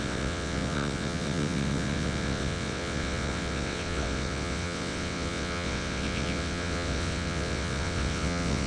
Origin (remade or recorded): remade